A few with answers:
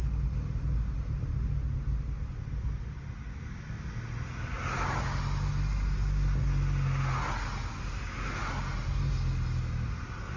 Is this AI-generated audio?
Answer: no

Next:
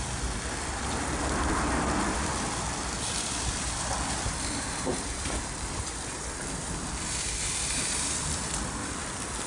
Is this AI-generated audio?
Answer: yes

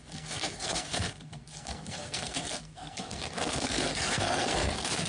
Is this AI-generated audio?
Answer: yes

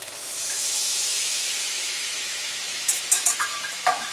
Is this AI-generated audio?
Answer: yes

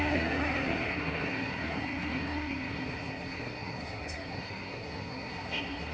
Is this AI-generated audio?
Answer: yes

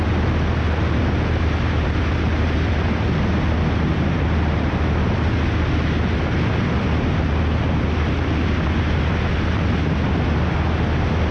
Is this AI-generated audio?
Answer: no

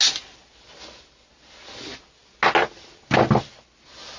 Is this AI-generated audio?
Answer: no